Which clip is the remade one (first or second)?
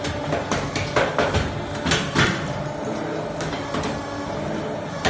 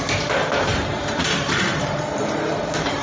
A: second